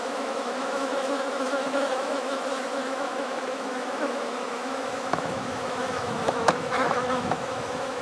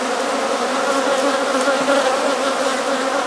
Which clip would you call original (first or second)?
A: second